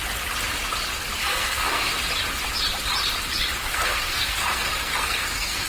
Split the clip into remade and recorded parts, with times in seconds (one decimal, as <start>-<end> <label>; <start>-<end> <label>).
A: 0.0-1.2 recorded; 1.2-1.9 remade; 1.9-3.6 recorded; 3.6-5.7 remade